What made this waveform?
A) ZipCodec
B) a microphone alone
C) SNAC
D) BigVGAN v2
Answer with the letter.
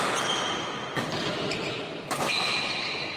B